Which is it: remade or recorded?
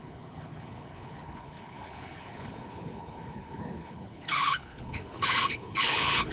remade